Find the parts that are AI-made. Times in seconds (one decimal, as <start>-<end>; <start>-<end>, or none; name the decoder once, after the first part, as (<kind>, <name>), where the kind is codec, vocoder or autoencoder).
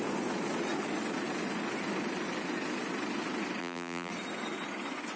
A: 3.6-4.1 (vocoder, BigVGAN v2)